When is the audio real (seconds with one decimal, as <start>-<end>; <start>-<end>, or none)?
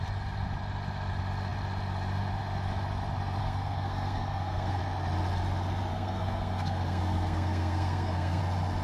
0.0-3.4; 4.8-5.9; 8.4-8.8